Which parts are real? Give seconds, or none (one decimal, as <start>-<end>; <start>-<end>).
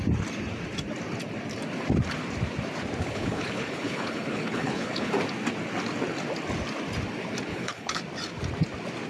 0.0-3.0; 5.1-7.5; 8.0-9.1